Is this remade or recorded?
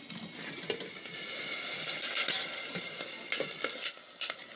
recorded